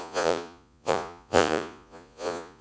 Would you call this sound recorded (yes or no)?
no